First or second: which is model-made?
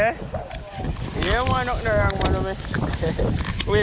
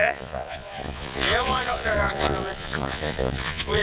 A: second